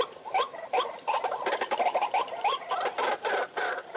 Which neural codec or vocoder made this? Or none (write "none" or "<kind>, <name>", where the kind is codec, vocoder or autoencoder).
vocoder, BigVGAN v2